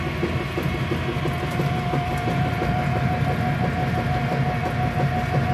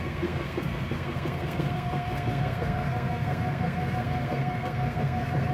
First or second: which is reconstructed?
second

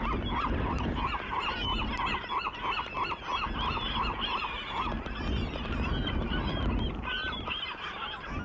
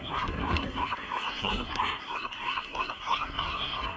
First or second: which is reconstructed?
second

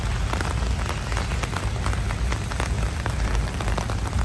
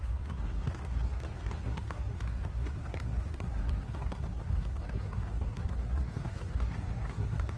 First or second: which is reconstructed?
second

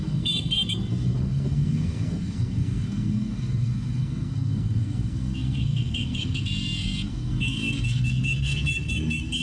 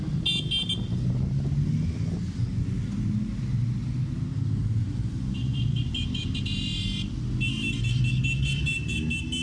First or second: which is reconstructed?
first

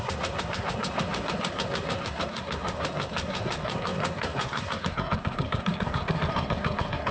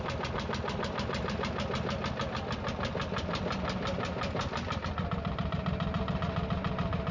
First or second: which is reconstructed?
first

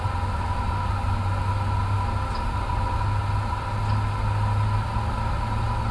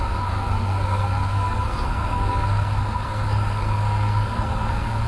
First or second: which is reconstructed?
second